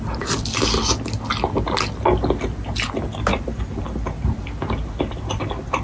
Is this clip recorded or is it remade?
recorded